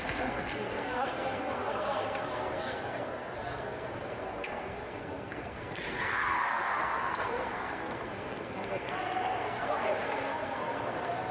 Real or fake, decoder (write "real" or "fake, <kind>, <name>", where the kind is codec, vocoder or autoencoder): fake, codec, SNAC